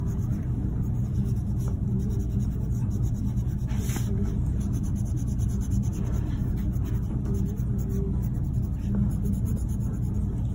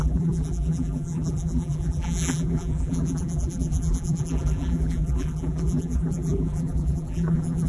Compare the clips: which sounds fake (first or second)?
second